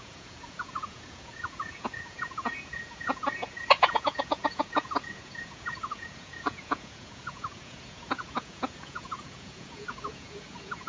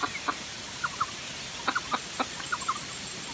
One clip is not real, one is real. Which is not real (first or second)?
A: first